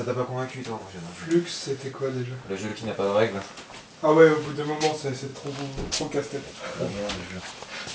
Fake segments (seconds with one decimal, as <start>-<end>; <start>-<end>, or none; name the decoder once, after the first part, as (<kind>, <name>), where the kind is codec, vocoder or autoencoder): none